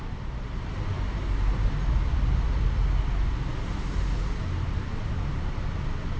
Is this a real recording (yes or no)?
yes